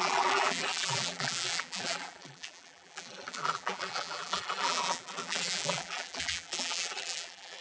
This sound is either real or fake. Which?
fake